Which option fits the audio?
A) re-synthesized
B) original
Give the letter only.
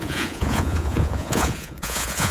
A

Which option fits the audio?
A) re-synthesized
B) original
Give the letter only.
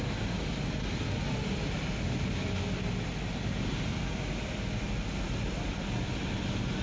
B